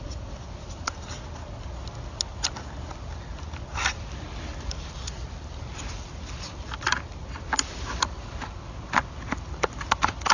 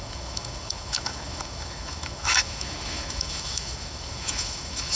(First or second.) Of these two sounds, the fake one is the second